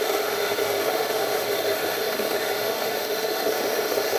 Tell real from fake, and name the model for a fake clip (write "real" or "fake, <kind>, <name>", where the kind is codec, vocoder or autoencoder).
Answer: fake, autoencoder, DAC-VAE